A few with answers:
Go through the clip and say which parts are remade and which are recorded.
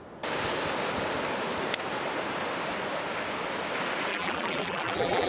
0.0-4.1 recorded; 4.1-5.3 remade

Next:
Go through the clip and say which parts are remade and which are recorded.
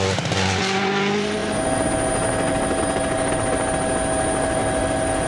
0.0-5.3 recorded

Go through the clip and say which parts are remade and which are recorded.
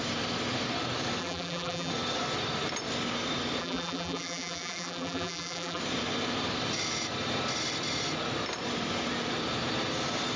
0.0-1.2 recorded; 1.2-1.9 remade; 1.9-3.6 recorded; 3.6-5.8 remade; 5.8-10.4 recorded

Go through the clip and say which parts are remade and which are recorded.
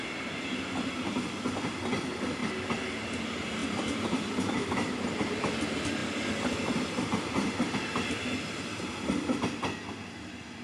0.0-10.6 recorded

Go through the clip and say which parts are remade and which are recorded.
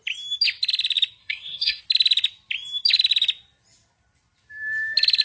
0.0-1.2 recorded; 1.2-1.8 remade; 1.8-5.2 recorded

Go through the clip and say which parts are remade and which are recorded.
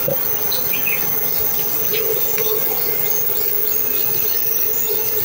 0.0-5.2 recorded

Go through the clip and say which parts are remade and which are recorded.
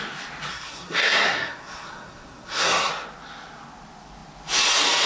0.0-0.5 recorded; 0.5-2.9 remade; 2.9-5.1 recorded